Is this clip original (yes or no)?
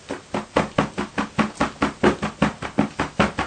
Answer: yes